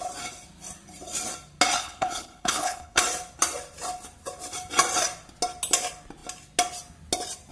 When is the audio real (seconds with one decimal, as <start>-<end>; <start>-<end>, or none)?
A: 0.0-1.8; 3.0-7.5